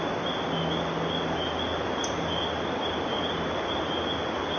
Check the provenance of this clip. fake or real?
real